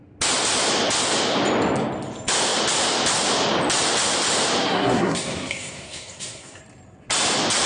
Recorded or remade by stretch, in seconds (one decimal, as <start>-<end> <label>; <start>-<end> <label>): 0.0-4.6 recorded; 4.6-6.6 remade; 6.6-7.7 recorded